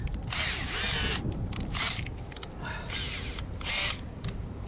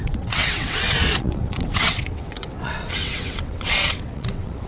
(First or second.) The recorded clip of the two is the first